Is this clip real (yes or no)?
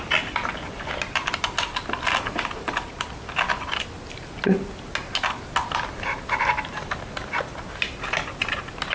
yes